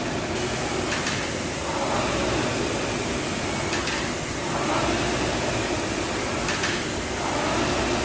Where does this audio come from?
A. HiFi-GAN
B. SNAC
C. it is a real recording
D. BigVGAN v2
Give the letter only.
C